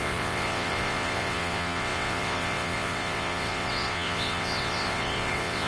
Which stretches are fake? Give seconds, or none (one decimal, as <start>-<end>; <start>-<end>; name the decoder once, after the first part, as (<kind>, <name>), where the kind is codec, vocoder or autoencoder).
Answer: 0.0-5.7 (vocoder, WaveNeXt)